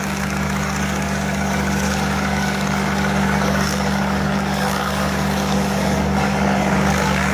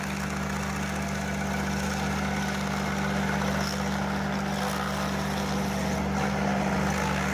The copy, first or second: first